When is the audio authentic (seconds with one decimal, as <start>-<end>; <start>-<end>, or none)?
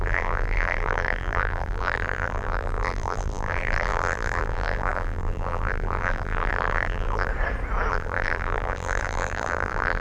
7.3-7.9